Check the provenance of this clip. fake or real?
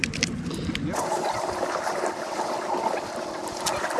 real